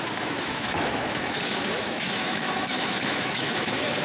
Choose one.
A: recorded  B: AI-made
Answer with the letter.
B